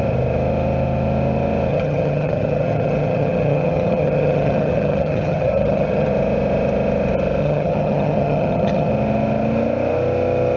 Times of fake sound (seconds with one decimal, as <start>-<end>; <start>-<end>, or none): 1.7-6.1; 7.4-8.9